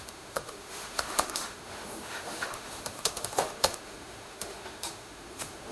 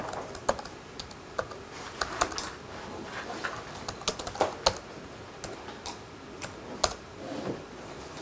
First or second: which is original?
second